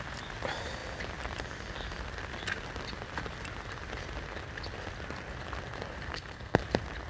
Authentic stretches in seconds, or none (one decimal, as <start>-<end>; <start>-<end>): 0.0-6.1; 6.6-7.1